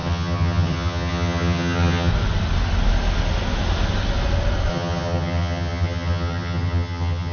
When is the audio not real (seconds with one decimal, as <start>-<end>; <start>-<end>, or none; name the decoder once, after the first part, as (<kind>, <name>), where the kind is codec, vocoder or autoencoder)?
0.0-2.1 (vocoder, HiFi-GAN); 4.7-7.3